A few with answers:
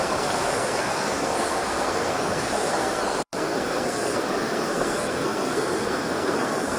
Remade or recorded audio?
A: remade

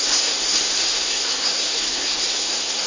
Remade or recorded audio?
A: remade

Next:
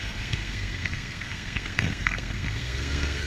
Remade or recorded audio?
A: remade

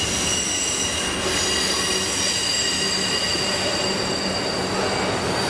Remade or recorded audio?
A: recorded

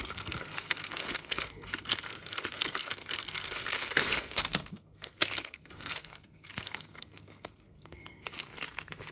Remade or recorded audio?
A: remade